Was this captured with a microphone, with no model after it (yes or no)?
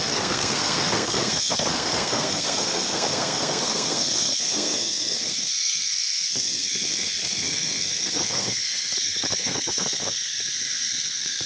no